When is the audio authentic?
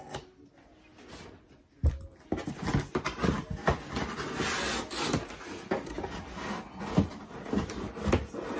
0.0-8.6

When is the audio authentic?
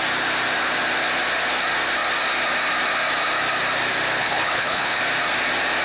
0.0-4.2; 5.0-5.8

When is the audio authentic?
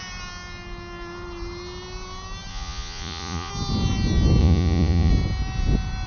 0.0-2.5; 3.5-4.4; 5.1-6.1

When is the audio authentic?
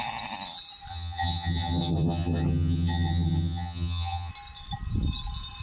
0.0-0.9; 4.3-5.6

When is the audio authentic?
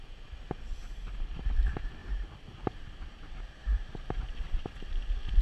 0.0-2.0; 5.0-5.4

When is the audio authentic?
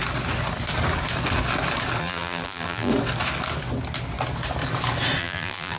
0.0-2.0; 2.9-5.2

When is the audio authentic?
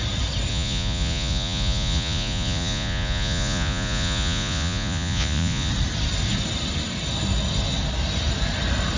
0.0-0.5; 5.7-9.0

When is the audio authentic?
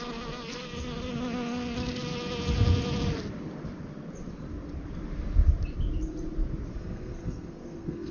0.0-6.7